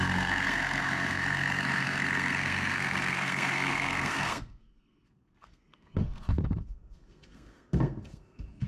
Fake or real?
fake